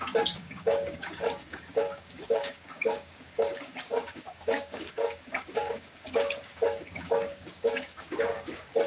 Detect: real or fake fake